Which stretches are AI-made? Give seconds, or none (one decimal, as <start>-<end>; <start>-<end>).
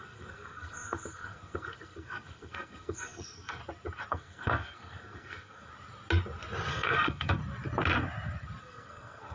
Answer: 0.0-3.6; 4.1-5.7; 6.7-7.4; 8.6-9.3